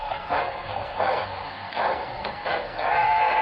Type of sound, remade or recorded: remade